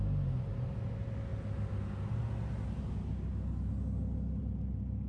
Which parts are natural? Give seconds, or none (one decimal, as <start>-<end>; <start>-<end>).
0.0-5.1